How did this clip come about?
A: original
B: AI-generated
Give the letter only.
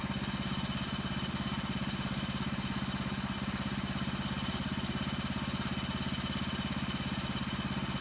A